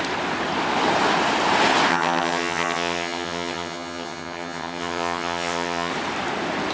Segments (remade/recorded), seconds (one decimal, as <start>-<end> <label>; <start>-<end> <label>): 0.0-1.9 recorded; 1.9-5.9 remade; 5.9-6.7 recorded